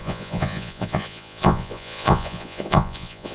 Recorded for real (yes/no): no